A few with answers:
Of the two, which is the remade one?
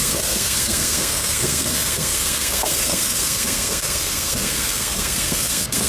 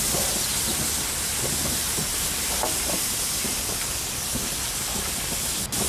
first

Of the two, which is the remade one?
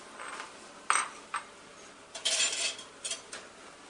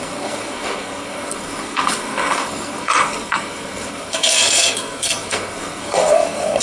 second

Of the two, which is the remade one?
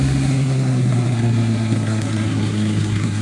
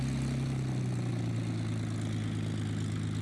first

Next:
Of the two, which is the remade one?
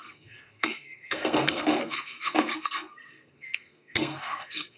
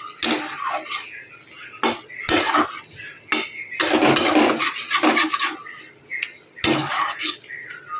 first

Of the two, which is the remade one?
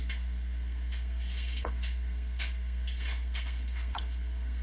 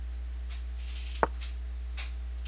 first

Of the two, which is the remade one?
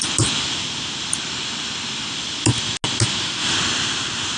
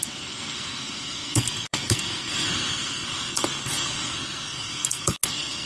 second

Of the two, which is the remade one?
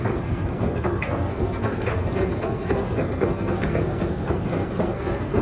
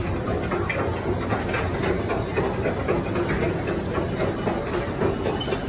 first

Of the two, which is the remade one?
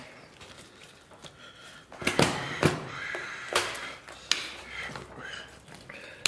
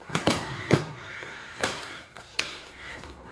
second